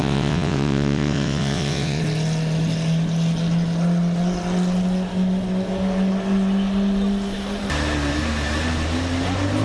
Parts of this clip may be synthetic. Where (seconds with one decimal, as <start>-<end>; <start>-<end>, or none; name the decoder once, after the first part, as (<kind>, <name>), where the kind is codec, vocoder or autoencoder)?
0.0-2.0 (vocoder, WaveNeXt)